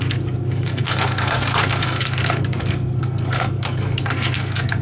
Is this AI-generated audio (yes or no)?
yes